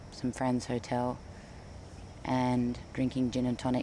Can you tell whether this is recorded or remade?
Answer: recorded